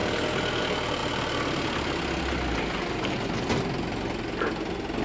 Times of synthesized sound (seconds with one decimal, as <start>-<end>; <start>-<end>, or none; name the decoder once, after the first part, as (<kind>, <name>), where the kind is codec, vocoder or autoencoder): none